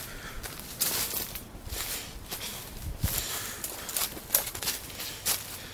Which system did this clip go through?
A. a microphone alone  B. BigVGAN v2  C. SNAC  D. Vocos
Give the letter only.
A